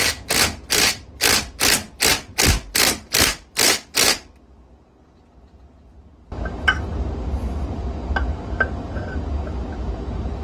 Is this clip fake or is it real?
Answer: real